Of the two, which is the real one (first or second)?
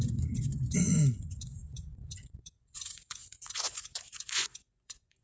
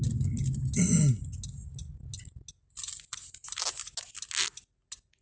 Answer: second